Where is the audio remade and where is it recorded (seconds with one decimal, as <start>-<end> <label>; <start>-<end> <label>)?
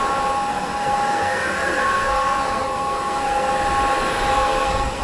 0.0-0.5 recorded; 0.5-3.5 remade; 3.5-4.3 recorded; 4.3-5.0 remade